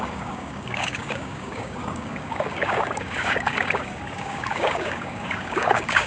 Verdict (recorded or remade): remade